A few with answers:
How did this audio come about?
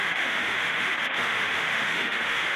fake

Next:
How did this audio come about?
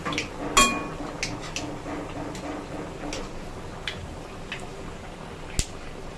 real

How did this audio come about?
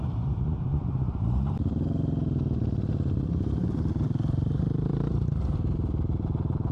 fake